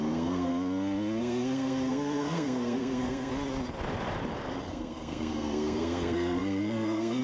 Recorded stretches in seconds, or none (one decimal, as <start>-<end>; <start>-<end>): 0.5-1.2; 3.3-4.7